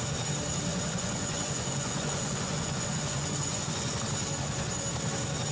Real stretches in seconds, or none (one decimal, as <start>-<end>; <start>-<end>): 0.0-0.7; 4.0-5.5